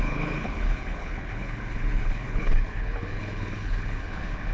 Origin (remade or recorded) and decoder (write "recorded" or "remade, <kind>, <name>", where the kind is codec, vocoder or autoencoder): remade, codec, HILCodec